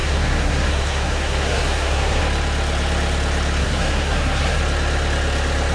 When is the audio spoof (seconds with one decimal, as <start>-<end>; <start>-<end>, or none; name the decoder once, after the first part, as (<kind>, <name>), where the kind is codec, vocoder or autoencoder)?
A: 0.0-2.2 (codec, SNAC); 3.6-4.6